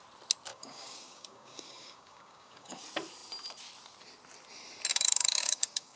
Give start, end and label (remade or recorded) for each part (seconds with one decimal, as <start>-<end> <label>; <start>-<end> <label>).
0.0-0.5 recorded; 0.5-2.8 remade; 2.8-4.9 recorded; 4.9-6.0 remade

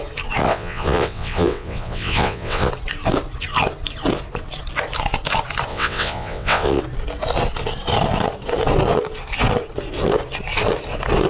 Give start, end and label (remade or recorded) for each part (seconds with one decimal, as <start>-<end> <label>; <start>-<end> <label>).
0.0-0.4 recorded; 0.4-2.7 remade; 2.7-5.7 recorded; 5.7-6.8 remade; 6.8-11.3 recorded

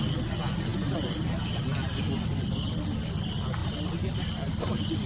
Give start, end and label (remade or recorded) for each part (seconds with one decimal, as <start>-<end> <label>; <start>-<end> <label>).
0.0-5.1 recorded

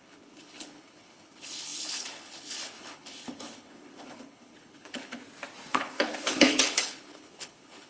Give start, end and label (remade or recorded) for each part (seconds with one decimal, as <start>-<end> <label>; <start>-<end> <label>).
0.0-5.2 remade; 5.2-5.7 recorded; 5.7-7.9 remade

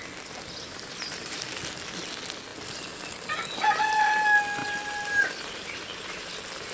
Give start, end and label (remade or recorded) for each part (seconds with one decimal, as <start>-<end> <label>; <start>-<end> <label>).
0.0-0.6 recorded; 0.6-1.4 remade; 1.4-4.6 recorded; 4.6-6.3 remade; 6.3-6.7 recorded